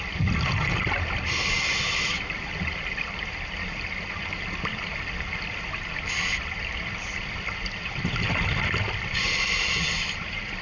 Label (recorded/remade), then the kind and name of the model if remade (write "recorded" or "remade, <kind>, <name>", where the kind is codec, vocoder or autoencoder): recorded